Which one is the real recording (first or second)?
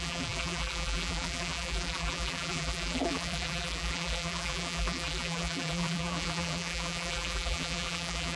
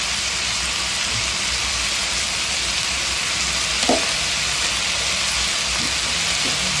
second